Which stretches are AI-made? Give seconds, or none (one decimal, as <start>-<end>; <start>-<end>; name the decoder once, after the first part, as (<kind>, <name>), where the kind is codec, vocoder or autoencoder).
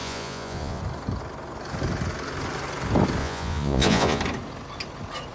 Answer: 0.0-0.8 (vocoder, Vocos); 3.2-4.2